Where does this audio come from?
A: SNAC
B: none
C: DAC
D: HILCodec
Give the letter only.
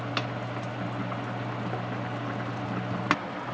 B